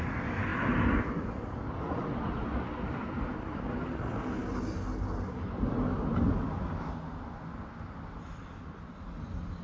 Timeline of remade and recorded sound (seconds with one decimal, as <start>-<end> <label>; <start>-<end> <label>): 0.0-9.6 recorded